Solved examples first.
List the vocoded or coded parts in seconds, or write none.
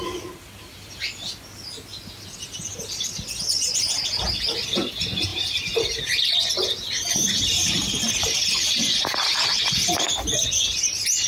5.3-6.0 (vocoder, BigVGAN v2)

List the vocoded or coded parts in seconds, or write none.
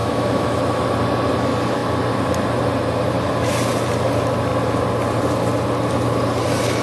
0.0-0.6 (autoencoder, DAC-VAE)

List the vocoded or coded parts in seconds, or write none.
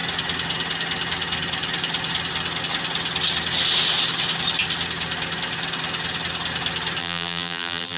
7.0-8.0 (vocoder, BigVGAN v2)